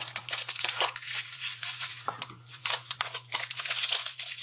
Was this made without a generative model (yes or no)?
no